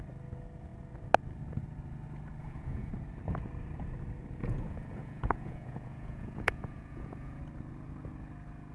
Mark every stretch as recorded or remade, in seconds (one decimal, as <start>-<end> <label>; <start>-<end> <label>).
0.0-2.4 recorded; 2.4-2.9 remade; 2.9-4.4 recorded; 4.4-7.4 remade; 7.4-8.7 recorded